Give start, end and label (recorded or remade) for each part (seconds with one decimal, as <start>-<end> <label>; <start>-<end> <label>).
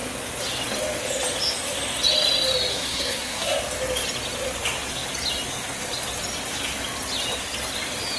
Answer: 0.0-2.7 recorded; 2.7-3.6 remade; 3.6-8.2 recorded